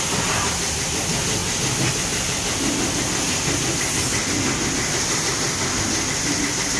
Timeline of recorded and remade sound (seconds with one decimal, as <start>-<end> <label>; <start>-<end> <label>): 0.0-6.8 recorded